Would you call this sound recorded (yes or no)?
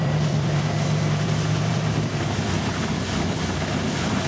no